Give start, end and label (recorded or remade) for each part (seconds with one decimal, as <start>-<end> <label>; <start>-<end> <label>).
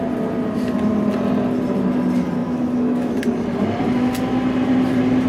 0.0-2.4 recorded; 2.4-3.2 remade; 3.2-5.3 recorded